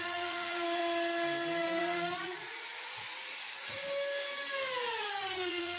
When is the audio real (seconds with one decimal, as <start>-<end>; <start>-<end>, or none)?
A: 0.8-1.8; 3.8-5.0